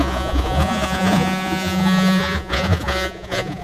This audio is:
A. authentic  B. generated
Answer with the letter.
B